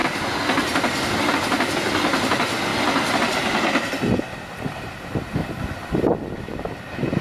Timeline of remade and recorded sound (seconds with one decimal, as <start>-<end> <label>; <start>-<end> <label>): 0.0-1.3 recorded; 1.3-2.7 remade; 2.7-6.4 recorded; 6.4-7.2 remade